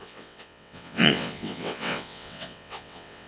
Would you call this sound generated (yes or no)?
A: yes